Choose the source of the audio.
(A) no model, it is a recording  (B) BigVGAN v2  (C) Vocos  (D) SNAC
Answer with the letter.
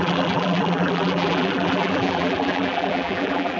B